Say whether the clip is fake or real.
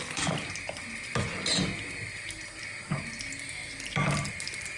real